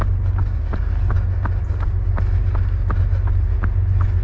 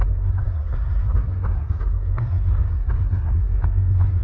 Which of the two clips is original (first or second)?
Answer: first